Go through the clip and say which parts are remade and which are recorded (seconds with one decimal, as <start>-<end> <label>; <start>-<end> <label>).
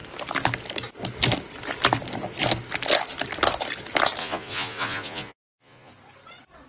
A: 0.0-4.2 recorded; 4.2-5.9 remade; 5.9-6.7 recorded